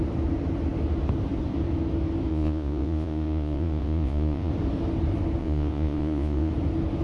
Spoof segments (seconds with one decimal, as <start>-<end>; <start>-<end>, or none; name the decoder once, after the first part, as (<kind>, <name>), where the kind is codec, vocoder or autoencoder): 2.3-4.5 (vocoder, Vocos); 5.4-6.5